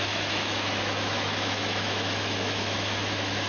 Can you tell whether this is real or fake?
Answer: fake